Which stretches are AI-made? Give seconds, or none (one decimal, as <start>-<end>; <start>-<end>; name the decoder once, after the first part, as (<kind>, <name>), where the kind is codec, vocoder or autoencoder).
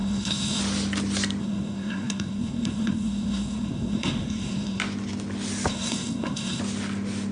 0.0-0.6 (codec, SNAC); 1.4-4.8; 5.7-6.6